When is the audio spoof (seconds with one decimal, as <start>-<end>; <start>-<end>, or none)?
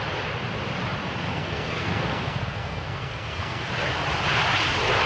1.3-3.7